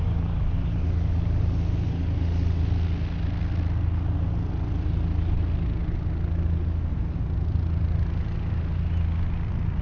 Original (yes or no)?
yes